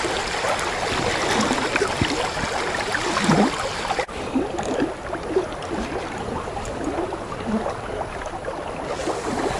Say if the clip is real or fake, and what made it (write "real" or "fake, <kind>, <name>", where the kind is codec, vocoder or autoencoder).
real